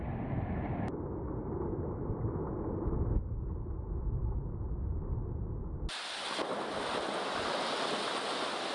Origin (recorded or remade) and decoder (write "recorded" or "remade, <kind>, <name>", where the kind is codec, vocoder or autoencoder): recorded